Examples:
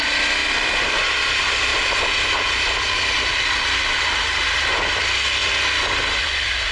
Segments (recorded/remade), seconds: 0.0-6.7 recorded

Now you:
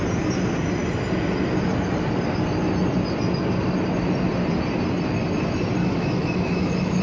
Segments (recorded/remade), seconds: 0.0-5.8 recorded; 5.8-7.0 remade